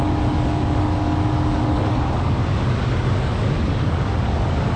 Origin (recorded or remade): remade